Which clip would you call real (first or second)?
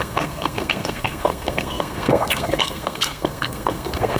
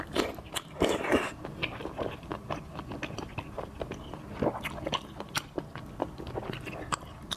second